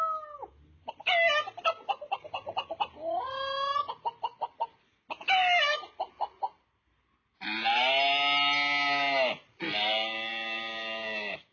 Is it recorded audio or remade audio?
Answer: recorded